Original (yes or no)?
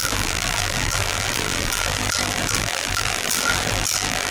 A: no